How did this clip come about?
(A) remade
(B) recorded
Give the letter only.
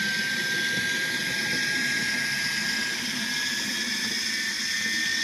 B